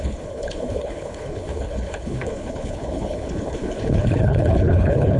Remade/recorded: remade